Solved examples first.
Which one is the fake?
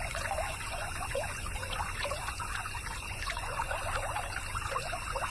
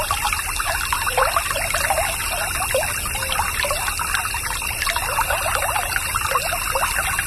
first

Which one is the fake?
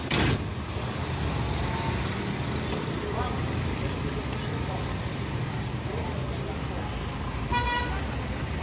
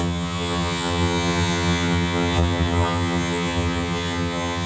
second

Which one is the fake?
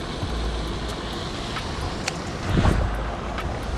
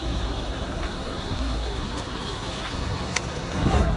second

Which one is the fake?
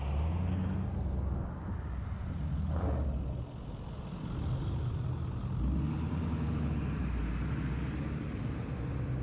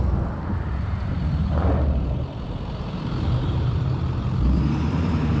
second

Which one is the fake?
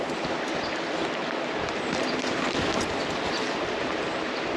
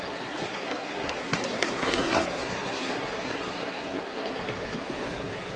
second